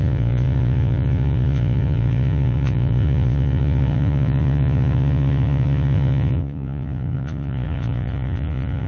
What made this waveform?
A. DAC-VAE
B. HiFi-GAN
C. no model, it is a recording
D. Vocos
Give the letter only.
D